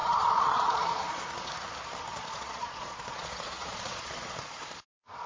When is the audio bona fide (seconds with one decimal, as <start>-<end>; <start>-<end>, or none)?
1.5-2.1